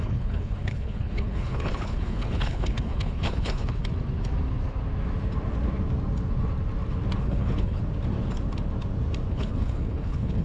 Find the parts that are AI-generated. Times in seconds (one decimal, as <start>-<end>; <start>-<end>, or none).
0.0-3.8; 7.2-7.8; 9.3-10.4